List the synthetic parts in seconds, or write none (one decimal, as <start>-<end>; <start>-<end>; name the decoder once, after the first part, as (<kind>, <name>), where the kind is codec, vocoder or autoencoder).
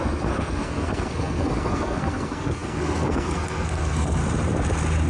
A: 0.0-4.2 (codec, SNAC)